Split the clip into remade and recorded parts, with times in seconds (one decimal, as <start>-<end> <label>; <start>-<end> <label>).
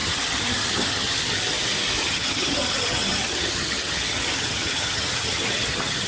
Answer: 0.0-1.2 remade; 1.2-2.0 recorded; 2.0-6.1 remade